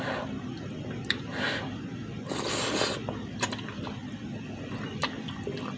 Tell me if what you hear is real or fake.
real